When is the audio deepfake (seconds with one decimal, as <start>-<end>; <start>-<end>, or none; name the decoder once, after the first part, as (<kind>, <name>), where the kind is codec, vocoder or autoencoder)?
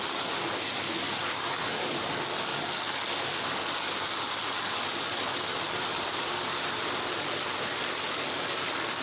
none